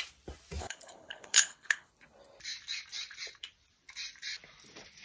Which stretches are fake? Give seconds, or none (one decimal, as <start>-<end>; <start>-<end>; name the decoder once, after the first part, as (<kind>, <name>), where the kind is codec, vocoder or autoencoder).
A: 0.6-1.9 (codec, HILCodec)